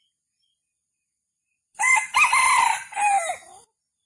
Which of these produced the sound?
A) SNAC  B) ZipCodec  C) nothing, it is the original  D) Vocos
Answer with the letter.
C